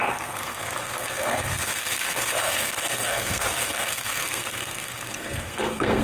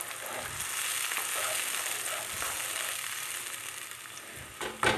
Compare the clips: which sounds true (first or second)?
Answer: second